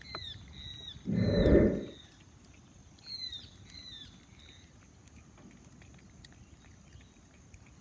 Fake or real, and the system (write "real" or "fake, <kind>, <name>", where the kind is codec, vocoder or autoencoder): real